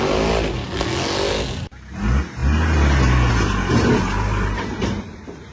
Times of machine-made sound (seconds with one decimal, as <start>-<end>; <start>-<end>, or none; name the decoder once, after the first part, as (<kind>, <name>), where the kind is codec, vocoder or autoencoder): none